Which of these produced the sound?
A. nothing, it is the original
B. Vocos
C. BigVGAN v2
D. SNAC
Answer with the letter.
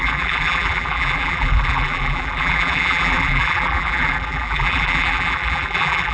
C